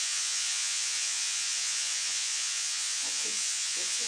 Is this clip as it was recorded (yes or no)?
no